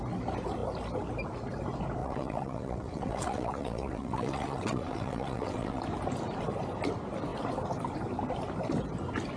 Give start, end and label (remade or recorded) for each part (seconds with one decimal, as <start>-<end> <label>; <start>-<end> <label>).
0.0-2.0 recorded; 2.0-5.8 remade; 5.8-9.4 recorded